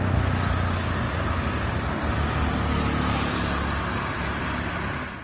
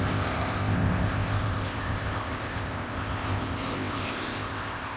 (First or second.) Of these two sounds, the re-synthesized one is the second